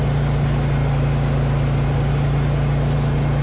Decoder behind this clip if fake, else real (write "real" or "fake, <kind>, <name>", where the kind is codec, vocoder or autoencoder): real